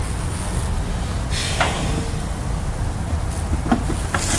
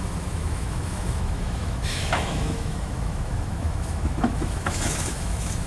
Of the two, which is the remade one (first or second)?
second